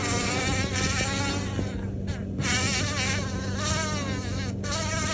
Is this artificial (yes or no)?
no